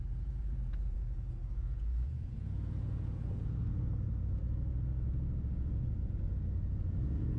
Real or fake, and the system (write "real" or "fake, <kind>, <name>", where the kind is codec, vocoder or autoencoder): fake, vocoder, Vocos